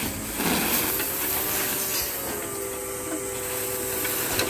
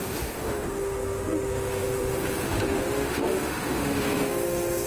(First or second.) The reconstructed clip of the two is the second